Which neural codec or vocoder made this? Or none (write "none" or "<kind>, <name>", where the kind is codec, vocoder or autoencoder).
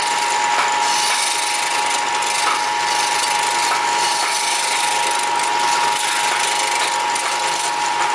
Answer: none